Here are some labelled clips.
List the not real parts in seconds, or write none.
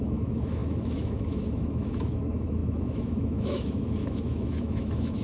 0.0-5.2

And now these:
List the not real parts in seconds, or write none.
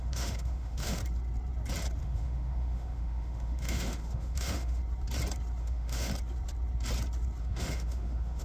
0.0-1.0; 2.0-4.8; 5.6-6.1; 7.4-8.4